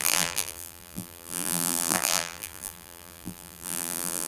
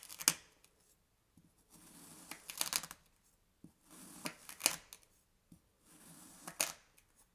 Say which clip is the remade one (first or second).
first